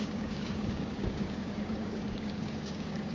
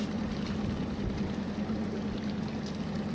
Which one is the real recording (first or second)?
second